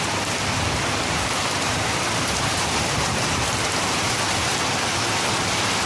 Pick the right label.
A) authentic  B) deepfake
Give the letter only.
B